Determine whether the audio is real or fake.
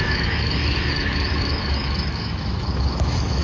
fake